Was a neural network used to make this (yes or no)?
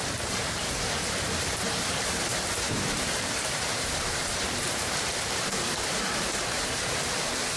yes